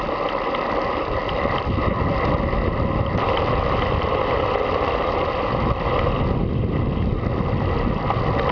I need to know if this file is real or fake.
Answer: real